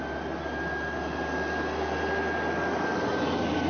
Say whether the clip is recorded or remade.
recorded